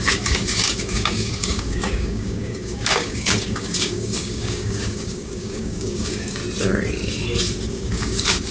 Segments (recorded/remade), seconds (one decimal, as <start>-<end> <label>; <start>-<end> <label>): 0.0-6.4 remade; 6.4-7.7 recorded; 7.7-8.5 remade